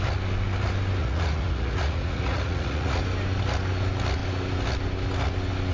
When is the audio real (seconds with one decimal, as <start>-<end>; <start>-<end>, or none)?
0.0-1.0; 3.0-5.7